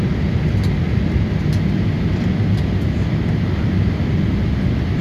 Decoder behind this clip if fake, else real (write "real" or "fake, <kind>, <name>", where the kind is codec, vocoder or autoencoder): real